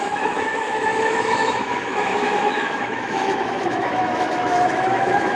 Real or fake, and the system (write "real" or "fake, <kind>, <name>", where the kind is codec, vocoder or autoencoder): fake, autoencoder, DAC-VAE